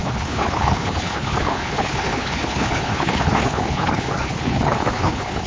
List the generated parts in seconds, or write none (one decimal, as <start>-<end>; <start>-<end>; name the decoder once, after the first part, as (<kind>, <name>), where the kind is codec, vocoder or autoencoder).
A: 0.0-5.5 (codec, HILCodec)